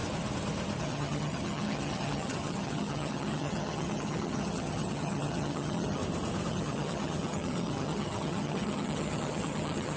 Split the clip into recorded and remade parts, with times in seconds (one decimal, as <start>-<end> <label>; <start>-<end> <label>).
0.0-0.8 recorded; 0.8-6.0 remade; 6.0-6.5 recorded; 6.5-10.0 remade